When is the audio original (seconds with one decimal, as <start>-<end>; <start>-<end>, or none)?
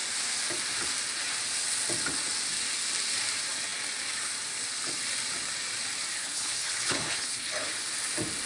0.0-6.1; 7.7-8.5